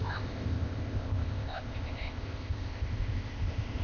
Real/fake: fake